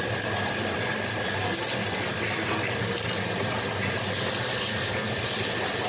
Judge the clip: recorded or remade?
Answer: recorded